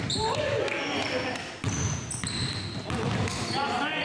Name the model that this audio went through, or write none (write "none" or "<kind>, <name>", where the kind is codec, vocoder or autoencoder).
none